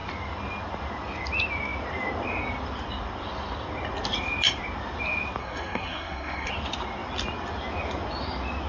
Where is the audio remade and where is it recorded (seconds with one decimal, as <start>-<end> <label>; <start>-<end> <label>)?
0.0-5.4 recorded; 5.4-6.5 remade; 6.5-8.7 recorded